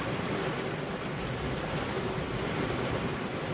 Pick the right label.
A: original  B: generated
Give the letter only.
A